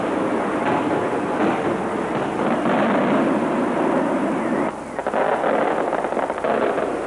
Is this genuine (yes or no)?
yes